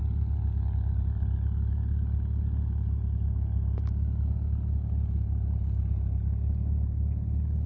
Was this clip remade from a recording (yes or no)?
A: no